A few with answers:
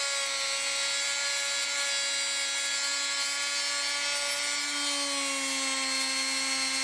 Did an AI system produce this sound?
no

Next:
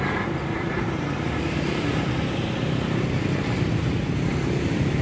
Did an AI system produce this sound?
yes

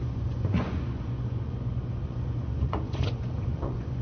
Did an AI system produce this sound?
yes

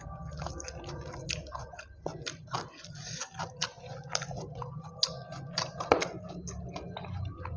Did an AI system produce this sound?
no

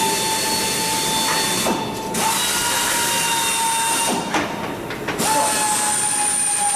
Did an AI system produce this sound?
no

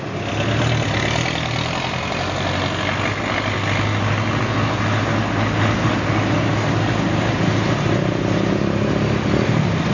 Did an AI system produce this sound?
no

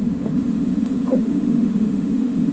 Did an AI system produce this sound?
yes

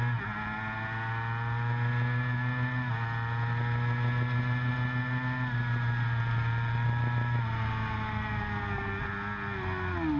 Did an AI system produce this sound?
no